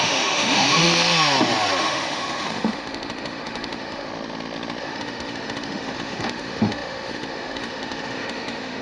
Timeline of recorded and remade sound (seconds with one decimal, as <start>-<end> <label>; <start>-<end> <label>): 0.0-0.8 remade; 0.8-1.8 recorded; 1.8-4.1 remade; 4.1-4.8 recorded; 4.8-8.8 remade